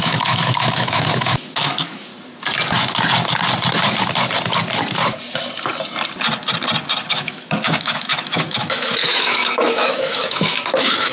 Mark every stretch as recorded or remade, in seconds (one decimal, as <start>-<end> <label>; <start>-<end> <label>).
0.0-2.1 remade; 2.1-7.1 recorded; 7.1-11.1 remade